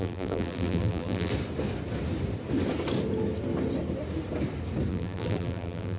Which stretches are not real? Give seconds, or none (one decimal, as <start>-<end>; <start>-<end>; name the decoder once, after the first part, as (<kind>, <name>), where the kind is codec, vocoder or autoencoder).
0.0-1.3 (vocoder, BigVGAN v2); 4.9-6.0